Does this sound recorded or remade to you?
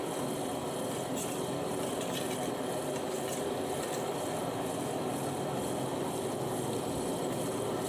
recorded